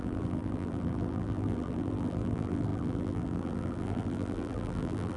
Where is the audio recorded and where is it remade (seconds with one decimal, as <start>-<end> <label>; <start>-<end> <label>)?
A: 0.0-5.2 remade